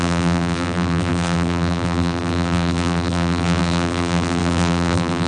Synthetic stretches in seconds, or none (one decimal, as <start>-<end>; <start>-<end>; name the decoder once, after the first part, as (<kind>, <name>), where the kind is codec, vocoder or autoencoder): 0.0-5.3 (vocoder, BigVGAN v2)